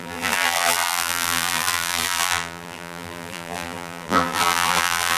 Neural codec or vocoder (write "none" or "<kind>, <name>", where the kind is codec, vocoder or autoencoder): vocoder, BigVGAN v2